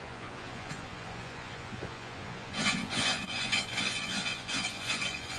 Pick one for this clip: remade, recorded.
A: remade